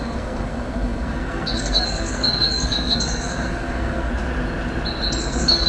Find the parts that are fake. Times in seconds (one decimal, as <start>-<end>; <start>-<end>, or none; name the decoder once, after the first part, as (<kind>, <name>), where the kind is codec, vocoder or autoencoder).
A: 0.0-4.1 (codec, SNAC); 5.2-5.7